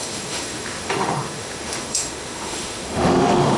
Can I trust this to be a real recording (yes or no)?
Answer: no